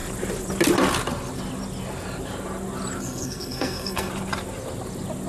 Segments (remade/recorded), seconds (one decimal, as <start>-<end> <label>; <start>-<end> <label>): 0.0-3.0 recorded; 3.0-4.1 remade; 4.1-5.3 recorded